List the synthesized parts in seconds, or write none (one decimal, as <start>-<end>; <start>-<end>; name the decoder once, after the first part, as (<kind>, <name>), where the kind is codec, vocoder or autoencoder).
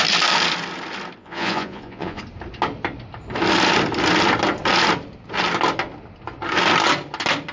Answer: 1.2-2.2 (vocoder, Vocos)